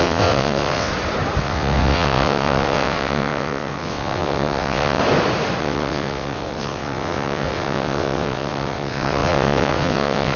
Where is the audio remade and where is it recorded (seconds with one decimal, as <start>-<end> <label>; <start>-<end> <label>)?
0.0-0.9 remade; 0.9-1.4 recorded; 1.4-5.0 remade; 5.0-5.6 recorded; 5.6-10.4 remade